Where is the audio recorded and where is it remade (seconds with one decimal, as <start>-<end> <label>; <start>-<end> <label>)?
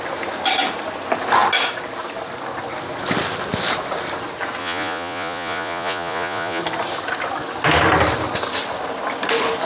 0.0-4.6 recorded; 4.6-6.6 remade; 6.6-9.7 recorded